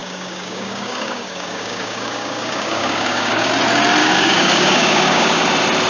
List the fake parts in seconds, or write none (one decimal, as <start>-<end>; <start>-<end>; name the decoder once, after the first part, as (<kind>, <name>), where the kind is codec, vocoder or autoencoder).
0.0-3.5 (codec, DAC); 4.0-5.4